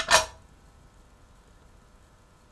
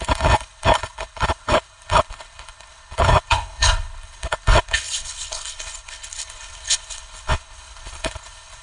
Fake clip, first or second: second